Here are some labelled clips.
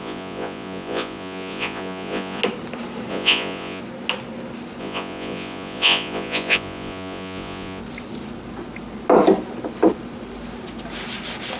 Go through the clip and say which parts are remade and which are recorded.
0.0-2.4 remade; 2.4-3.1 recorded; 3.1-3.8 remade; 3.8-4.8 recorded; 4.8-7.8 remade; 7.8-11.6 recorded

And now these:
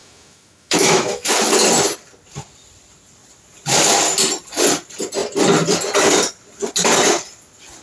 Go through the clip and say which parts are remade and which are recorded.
0.0-1.3 remade; 1.3-7.8 recorded